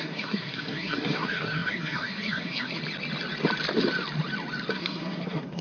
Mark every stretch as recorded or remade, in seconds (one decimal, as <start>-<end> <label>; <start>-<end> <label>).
0.0-2.8 remade; 2.8-4.7 recorded; 4.7-5.6 remade